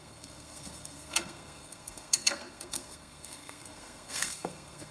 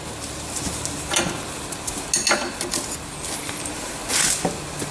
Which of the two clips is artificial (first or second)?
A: first